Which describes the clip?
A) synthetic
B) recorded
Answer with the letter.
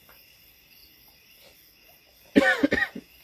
B